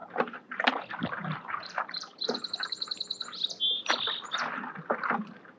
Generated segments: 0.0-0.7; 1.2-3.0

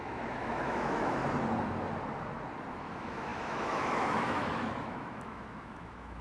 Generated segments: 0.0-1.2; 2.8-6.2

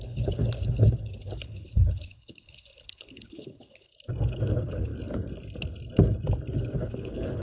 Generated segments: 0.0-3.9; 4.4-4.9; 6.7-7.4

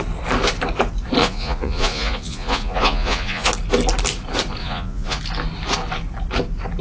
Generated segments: 1.2-3.5; 4.6-5.2

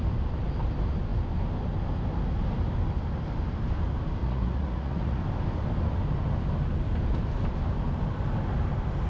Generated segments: 4.2-5.2

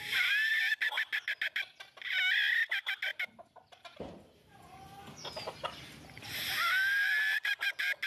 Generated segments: none

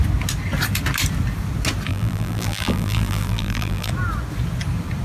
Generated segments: 1.9-3.9